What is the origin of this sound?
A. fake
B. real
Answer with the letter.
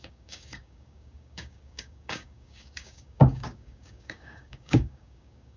A